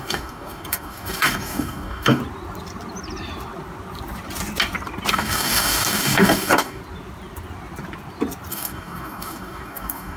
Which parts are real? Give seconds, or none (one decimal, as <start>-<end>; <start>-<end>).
2.2-5.1; 6.8-8.5